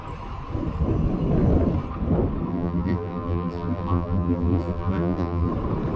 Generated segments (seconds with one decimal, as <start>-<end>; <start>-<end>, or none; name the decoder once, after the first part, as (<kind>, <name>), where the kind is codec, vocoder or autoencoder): 2.5-5.5 (vocoder, BigVGAN v2)